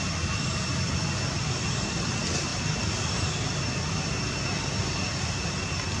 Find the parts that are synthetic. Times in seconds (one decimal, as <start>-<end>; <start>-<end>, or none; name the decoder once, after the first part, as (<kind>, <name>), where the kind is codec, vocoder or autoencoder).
none